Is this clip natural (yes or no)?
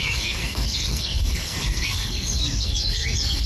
no